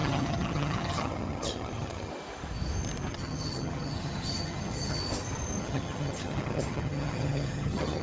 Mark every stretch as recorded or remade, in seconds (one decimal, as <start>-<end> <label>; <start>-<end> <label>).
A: 0.0-2.1 remade; 2.1-3.1 recorded; 3.1-5.0 remade; 5.0-5.6 recorded; 5.6-8.0 remade